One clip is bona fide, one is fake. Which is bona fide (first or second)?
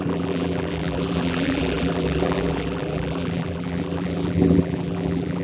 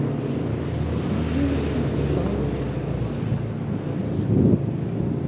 second